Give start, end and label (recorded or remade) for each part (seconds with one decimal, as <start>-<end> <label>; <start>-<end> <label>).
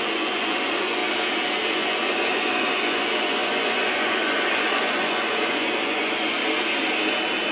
0.0-1.0 remade; 1.0-1.7 recorded; 1.7-6.4 remade; 6.4-7.5 recorded